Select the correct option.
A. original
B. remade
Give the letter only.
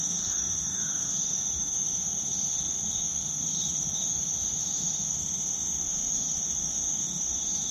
B